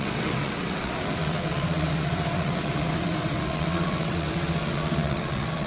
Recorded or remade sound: remade